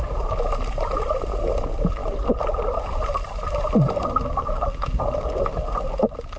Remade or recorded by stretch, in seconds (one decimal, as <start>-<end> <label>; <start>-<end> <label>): 0.0-6.4 recorded